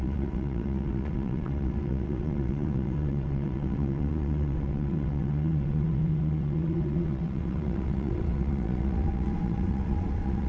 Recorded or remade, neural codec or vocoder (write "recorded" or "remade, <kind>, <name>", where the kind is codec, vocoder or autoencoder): remade, vocoder, WaveNeXt